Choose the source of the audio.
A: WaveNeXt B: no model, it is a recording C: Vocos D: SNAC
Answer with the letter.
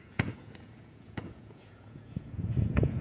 C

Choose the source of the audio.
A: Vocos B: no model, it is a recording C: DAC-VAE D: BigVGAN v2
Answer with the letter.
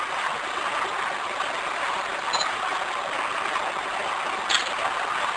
B